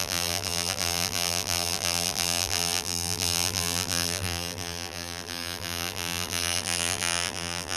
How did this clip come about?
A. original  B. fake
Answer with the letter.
B